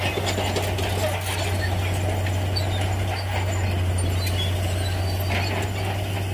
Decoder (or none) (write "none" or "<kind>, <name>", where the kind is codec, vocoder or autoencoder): none